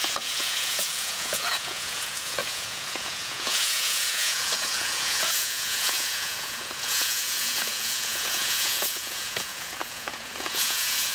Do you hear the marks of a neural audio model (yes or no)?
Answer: yes